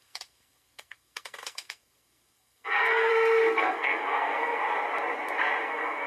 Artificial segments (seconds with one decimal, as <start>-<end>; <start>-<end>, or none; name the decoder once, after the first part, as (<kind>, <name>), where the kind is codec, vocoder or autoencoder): 0.0-3.1 (codec, SNAC); 3.6-4.6; 5.6-6.1